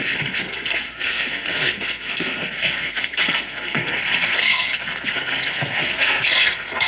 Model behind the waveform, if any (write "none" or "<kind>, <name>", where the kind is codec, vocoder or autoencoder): codec, SNAC